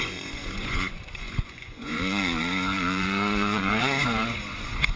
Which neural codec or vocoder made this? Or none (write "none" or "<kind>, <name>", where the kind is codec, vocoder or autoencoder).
vocoder, Vocos